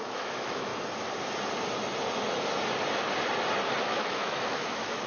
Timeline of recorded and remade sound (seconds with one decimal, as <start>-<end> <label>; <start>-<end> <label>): 0.0-0.7 remade; 0.7-3.8 recorded; 3.8-5.1 remade